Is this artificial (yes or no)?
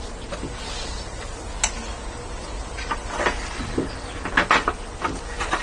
no